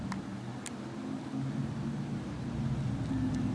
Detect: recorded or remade recorded